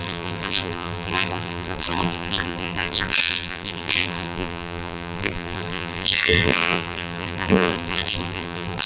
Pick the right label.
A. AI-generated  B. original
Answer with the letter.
A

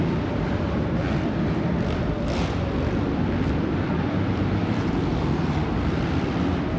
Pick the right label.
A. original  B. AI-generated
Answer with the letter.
B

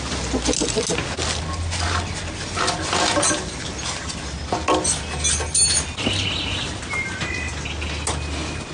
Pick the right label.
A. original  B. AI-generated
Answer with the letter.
A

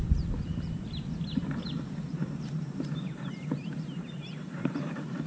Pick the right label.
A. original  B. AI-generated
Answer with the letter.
B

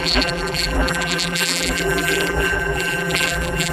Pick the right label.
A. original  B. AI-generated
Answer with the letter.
B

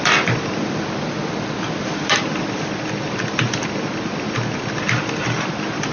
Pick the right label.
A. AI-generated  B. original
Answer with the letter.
A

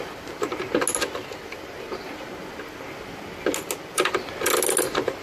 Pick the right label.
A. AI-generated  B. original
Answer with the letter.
B